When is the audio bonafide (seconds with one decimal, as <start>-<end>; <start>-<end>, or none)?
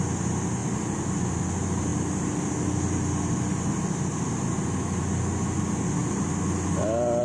0.0-7.2